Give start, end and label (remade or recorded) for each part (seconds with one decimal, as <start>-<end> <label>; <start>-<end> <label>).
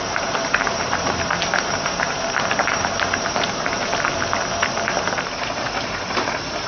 0.0-3.9 remade; 3.9-5.0 recorded; 5.0-6.7 remade